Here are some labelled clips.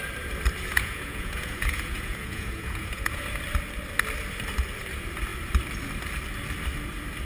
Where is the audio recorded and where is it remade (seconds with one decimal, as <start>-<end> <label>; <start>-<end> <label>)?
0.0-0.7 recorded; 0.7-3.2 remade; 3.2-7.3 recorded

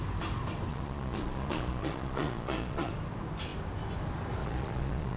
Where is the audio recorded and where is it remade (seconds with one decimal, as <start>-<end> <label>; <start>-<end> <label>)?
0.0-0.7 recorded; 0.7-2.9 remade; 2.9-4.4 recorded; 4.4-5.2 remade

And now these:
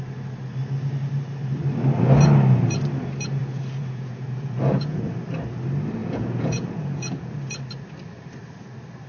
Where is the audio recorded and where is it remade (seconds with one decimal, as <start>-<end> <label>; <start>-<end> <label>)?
0.0-3.4 recorded; 3.4-5.1 remade; 5.1-6.0 recorded; 6.0-7.3 remade; 7.3-9.1 recorded